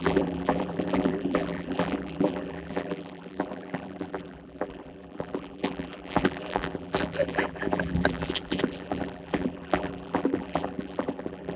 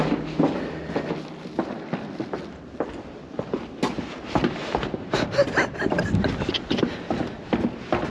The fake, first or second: first